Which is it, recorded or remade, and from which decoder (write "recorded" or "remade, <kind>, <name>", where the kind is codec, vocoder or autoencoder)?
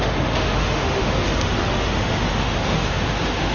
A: remade, autoencoder, DAC-VAE